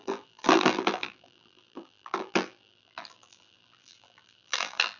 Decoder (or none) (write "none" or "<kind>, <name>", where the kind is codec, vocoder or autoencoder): vocoder, BigVGAN v2